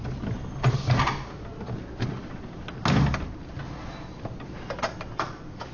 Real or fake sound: real